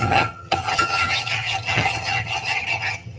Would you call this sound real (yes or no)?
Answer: no